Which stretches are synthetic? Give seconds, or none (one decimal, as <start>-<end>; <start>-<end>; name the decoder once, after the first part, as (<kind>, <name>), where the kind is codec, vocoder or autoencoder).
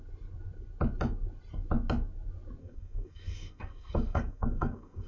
2.6-5.1 (codec, SNAC)